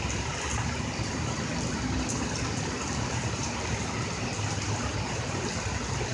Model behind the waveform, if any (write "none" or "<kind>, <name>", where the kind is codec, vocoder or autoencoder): none